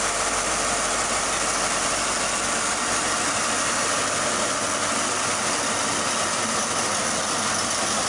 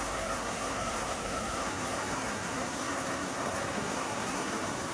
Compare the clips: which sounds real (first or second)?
first